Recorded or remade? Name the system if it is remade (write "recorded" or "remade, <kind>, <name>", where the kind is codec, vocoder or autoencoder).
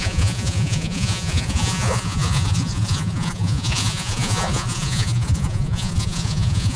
remade, vocoder, Vocos